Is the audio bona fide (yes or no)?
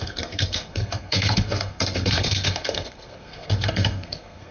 no